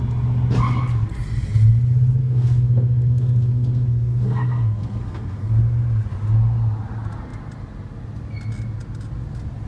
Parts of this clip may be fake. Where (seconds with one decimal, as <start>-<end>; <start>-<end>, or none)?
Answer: 2.2-5.5